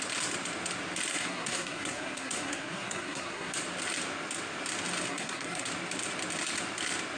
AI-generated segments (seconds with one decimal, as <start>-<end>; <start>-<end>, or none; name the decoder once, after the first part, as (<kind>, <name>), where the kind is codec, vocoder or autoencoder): 1.1-3.5 (codec, SNAC); 5.1-5.7